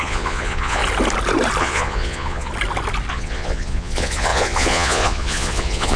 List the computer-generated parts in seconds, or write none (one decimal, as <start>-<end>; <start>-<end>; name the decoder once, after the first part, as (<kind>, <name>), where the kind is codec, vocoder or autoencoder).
0.0-0.8 (vocoder, Vocos); 1.6-2.5; 3.1-6.0